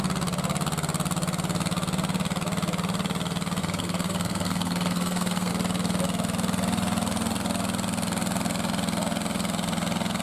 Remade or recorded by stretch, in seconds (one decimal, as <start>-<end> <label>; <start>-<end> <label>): 0.0-3.6 recorded; 3.6-5.5 remade; 5.5-10.2 recorded